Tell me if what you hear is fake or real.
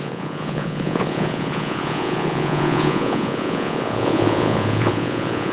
fake